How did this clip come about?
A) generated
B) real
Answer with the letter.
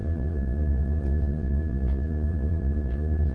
A